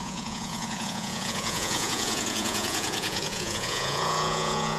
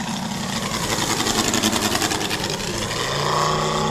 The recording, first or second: second